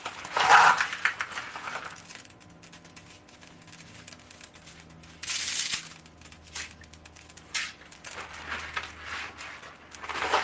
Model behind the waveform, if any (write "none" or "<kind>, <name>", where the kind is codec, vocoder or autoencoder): none